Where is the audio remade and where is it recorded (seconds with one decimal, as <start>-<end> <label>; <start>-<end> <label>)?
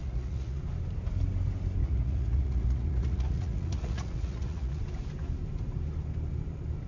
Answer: 0.0-0.6 remade; 0.6-1.8 recorded; 1.8-4.8 remade; 4.8-6.9 recorded